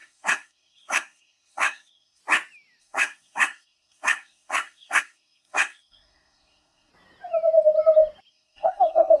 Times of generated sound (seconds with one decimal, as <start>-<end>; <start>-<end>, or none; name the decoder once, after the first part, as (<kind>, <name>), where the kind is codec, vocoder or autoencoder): 0.0-2.2 (codec, SNAC); 2.8-6.9; 8.3-9.2